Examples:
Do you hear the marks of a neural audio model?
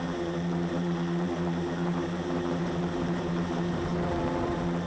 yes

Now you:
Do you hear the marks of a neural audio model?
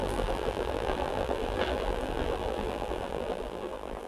yes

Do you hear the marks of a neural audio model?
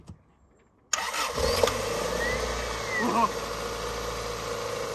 no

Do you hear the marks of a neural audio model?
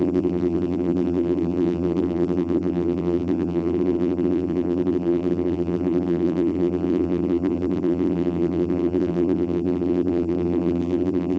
yes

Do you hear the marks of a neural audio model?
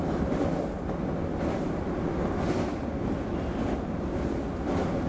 no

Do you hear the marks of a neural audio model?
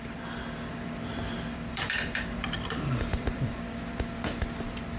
yes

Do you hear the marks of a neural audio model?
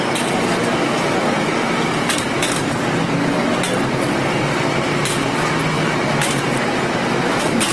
no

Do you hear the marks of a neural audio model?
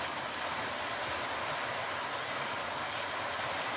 no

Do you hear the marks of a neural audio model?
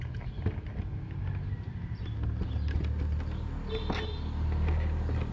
no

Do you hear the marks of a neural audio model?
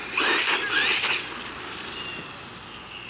no